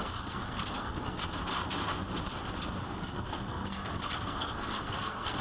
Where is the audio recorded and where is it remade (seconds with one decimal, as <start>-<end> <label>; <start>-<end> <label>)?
0.0-1.2 remade; 1.2-2.8 recorded; 2.8-5.4 remade